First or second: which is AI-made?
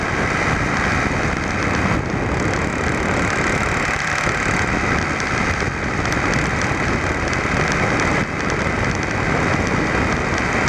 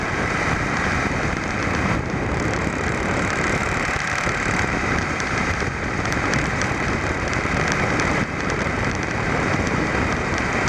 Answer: second